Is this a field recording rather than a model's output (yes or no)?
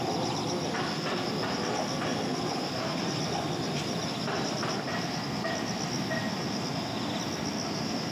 yes